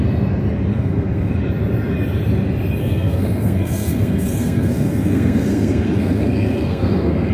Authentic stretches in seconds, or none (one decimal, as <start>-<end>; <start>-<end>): 0.0-0.7; 1.4-2.8